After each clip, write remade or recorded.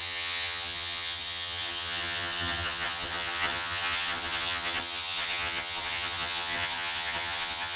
remade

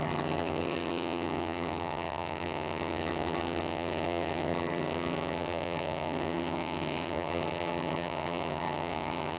remade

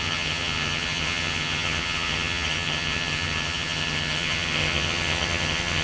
remade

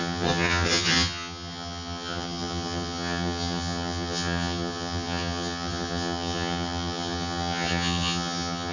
remade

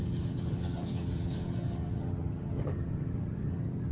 remade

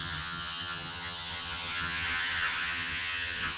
remade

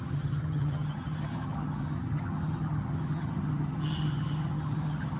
remade